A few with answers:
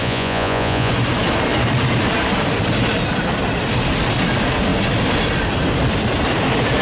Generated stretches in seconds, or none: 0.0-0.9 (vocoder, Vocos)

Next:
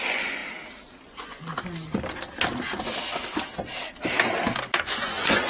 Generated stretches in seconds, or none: 0.0-0.4 (vocoder, Vocos); 1.0-1.5; 4.8-5.5

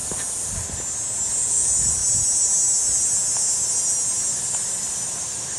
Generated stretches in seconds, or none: 1.4-2.0 (vocoder, Vocos)

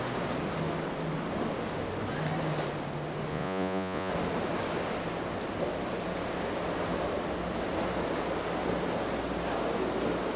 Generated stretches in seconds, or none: 3.3-4.1 (vocoder, Vocos)

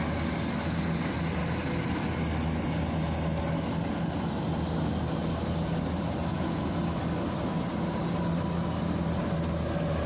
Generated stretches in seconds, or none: 6.3-6.8 (vocoder, Vocos)